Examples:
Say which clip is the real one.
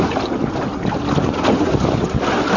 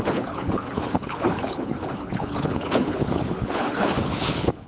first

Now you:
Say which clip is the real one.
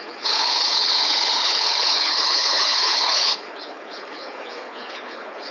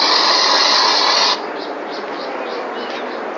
second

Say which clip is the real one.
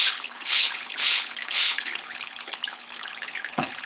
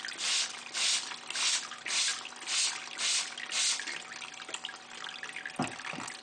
second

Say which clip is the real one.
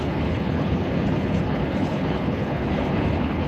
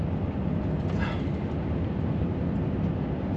second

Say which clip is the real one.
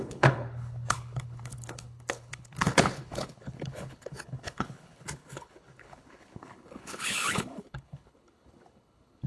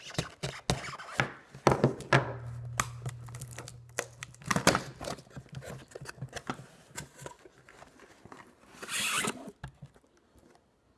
second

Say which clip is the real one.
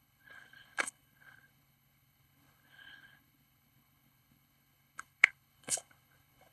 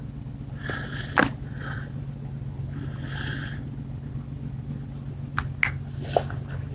second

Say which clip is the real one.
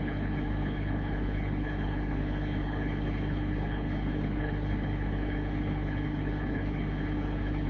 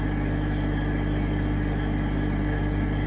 second